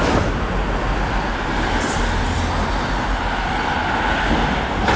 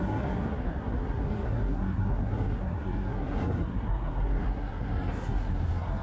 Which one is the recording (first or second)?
first